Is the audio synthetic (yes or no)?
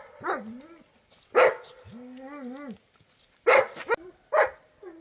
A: no